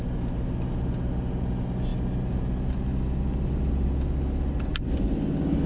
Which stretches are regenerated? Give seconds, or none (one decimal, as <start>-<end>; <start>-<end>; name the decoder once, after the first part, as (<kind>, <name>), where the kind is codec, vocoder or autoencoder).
none